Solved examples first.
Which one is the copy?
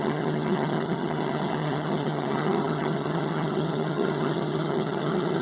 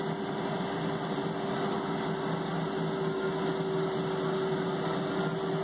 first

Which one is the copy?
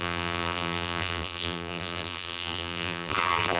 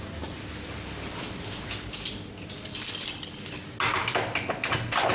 first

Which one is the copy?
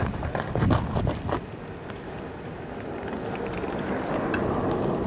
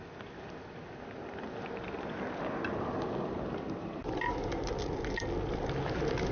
first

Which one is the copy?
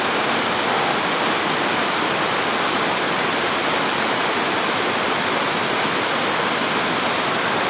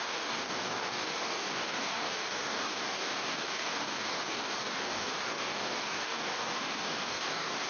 second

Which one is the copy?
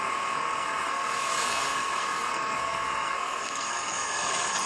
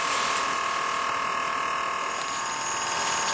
first